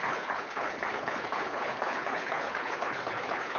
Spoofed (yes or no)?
yes